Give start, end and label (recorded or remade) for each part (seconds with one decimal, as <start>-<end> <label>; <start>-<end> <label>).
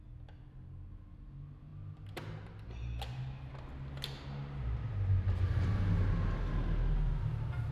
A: 0.0-7.7 recorded